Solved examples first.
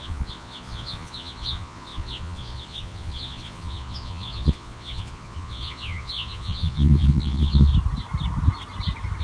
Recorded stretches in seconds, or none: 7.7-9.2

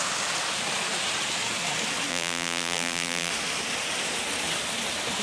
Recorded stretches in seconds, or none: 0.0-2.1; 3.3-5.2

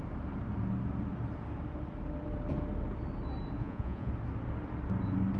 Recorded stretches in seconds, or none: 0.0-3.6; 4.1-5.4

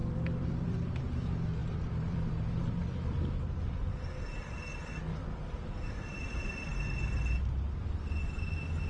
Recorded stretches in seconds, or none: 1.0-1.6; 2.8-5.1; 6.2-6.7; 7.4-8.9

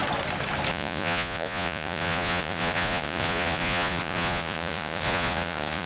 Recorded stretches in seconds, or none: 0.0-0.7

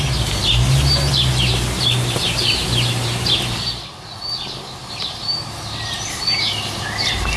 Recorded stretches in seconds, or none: 0.0-1.5; 4.2-4.8; 6.5-7.4